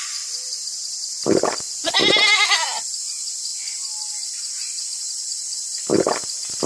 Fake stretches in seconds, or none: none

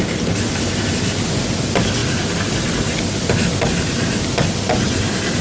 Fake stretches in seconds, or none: 2.0-2.5 (vocoder, BigVGAN v2)

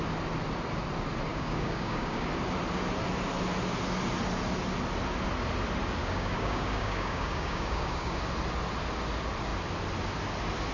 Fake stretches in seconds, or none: 1.3-2.3 (codec, DAC); 6.0-8.2

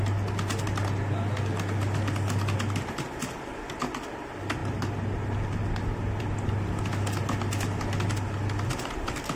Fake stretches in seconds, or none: none

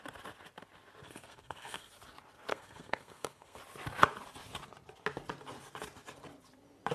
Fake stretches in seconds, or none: 1.0-1.9 (codec, SNAC); 2.5-3.6

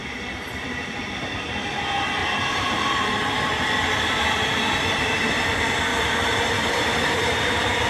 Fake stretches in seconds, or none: 0.0-1.3 (vocoder, BigVGAN v2); 2.2-3.5; 5.9-7.9